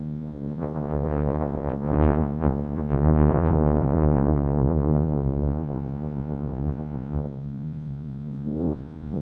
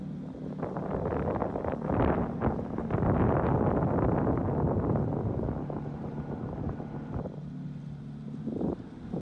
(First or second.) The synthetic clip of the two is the first